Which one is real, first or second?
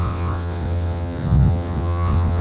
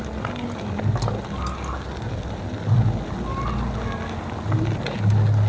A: second